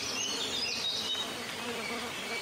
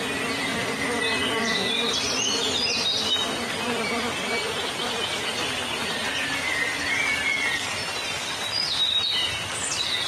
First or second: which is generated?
first